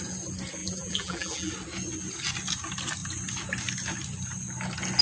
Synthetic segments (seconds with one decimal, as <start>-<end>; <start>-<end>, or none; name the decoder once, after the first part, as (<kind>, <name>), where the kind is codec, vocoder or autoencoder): 0.6-1.5 (vocoder, BigVGAN v2)